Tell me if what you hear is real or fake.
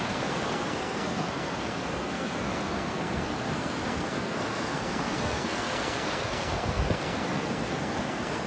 fake